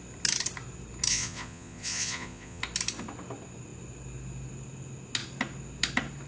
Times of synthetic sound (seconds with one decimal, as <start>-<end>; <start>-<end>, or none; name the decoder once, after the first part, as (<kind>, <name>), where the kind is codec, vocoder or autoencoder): 1.1-2.6 (vocoder, Vocos)